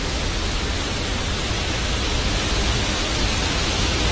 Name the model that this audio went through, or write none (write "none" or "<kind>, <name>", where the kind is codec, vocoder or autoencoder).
none